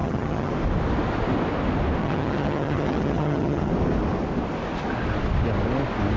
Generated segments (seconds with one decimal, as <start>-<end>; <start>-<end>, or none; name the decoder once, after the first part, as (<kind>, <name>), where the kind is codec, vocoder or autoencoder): 0.0-0.5 (vocoder, HiFi-GAN); 2.0-3.7